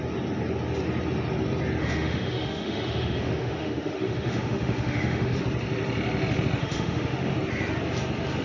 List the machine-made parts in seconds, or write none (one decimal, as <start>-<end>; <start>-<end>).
1.8-5.4; 6.6-7.3